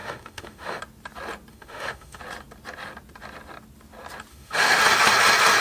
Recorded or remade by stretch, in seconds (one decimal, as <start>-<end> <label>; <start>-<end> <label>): 0.0-0.8 remade; 0.8-1.5 recorded; 1.5-2.2 remade; 2.2-4.3 recorded; 4.3-4.8 remade; 4.8-5.6 recorded